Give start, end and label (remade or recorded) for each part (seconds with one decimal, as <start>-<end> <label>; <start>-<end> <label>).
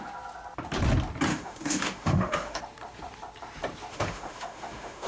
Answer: 0.0-1.3 recorded; 1.3-2.6 remade; 2.6-3.9 recorded; 3.9-5.1 remade